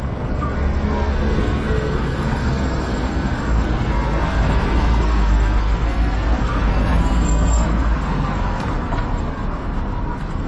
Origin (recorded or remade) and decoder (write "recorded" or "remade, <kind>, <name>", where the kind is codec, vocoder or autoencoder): remade, codec, SNAC